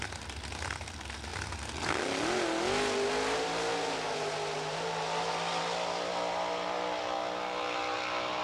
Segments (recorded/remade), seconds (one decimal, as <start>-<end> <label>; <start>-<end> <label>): 0.0-8.4 recorded